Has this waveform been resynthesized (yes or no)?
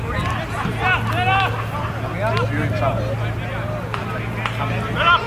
no